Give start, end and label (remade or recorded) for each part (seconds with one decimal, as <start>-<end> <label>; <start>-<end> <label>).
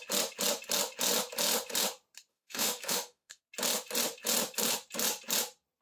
0.0-2.3 recorded; 2.3-3.4 remade; 3.4-5.8 recorded